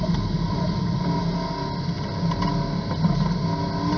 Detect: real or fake real